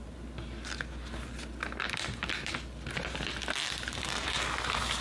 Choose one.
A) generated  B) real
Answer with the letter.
B